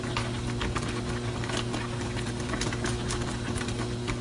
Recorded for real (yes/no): yes